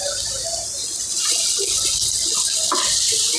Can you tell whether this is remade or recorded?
remade